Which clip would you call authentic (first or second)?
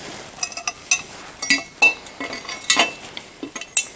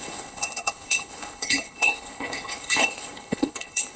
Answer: first